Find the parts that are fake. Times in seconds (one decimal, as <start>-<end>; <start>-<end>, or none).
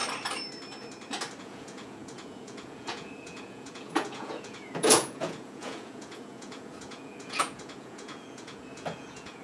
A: 1.4-9.4